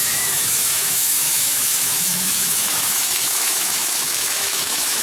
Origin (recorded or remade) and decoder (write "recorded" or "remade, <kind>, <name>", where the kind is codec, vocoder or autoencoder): remade, autoencoder, DAC-VAE